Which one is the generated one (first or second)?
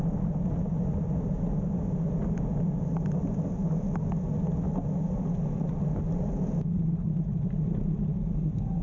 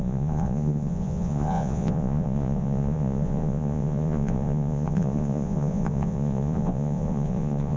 second